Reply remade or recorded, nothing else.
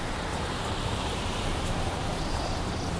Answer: remade